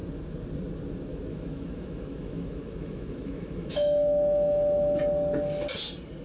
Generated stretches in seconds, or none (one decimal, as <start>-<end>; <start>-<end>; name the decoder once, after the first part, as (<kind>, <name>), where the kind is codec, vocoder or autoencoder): 1.3-5.0 (autoencoder, DAC-VAE)